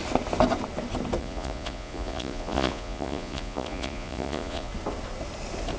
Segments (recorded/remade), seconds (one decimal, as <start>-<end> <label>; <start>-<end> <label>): 0.0-1.2 recorded; 1.2-4.7 remade; 4.7-5.8 recorded